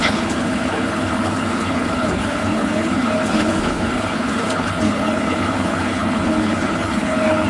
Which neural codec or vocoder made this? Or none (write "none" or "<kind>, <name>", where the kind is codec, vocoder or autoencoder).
codec, HILCodec